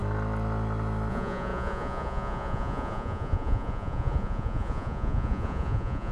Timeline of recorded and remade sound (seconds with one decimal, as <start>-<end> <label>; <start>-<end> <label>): 0.0-1.1 recorded; 1.1-6.1 remade